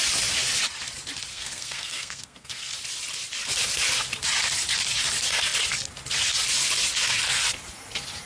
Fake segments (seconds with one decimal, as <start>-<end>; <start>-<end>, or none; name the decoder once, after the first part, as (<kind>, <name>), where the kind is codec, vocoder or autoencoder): 1.3-2.7 (codec, SNAC)